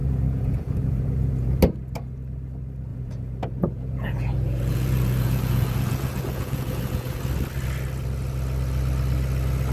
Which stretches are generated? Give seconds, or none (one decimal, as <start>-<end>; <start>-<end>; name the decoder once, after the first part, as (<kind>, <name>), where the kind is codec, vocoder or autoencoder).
0.0-1.6 (vocoder, Vocos); 2.9-7.2